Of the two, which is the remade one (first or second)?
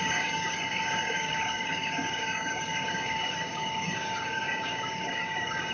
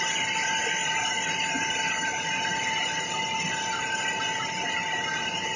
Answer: first